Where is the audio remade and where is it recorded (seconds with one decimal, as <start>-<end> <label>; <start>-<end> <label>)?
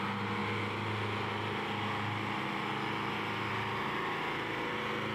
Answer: 0.0-5.1 recorded